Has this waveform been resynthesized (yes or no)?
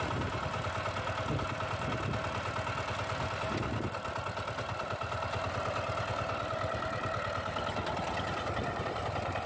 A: no